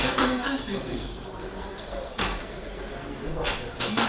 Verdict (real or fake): fake